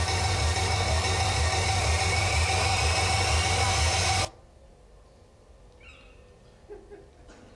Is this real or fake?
real